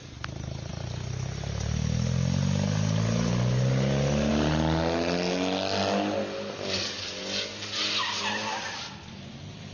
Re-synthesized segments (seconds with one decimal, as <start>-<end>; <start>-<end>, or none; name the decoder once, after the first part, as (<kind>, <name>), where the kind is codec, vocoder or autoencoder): none